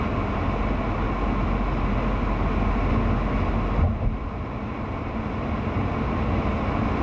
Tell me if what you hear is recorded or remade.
recorded